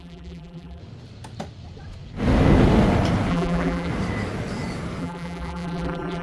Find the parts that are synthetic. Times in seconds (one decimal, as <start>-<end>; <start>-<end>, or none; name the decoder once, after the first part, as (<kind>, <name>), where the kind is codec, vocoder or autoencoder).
0.0-0.8 (vocoder, BigVGAN v2); 3.3-3.9; 5.0-6.2